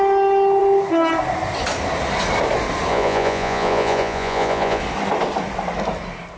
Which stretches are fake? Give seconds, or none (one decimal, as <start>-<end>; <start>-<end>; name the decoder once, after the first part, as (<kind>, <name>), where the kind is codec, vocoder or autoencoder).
2.9-4.8 (vocoder, Vocos)